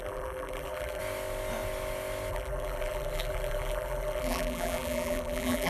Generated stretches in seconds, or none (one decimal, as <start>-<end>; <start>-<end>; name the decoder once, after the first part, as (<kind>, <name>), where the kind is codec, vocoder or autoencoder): 0.0-1.0 (vocoder, BigVGAN v2); 2.3-5.7